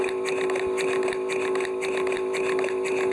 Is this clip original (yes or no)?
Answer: no